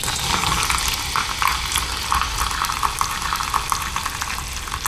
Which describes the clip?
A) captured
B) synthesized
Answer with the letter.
A